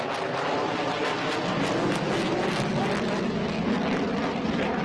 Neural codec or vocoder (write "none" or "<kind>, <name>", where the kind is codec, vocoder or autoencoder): none